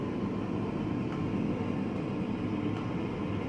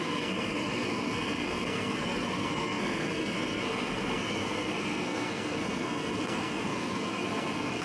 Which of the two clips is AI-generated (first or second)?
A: second